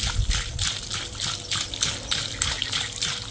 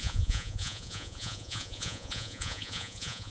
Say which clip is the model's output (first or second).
second